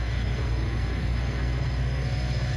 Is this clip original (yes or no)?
no